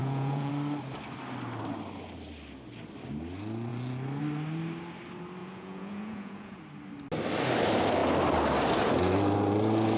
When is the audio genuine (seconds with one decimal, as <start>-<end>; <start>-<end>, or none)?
0.5-5.4; 6.6-10.0